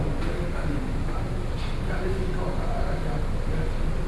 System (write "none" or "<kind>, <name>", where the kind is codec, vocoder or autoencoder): none